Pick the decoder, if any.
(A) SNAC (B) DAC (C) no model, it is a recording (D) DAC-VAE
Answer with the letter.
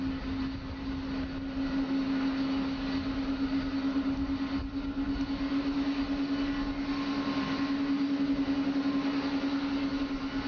C